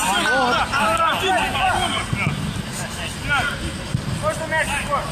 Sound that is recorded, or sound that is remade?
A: recorded